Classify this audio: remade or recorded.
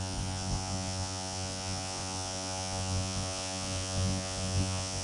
remade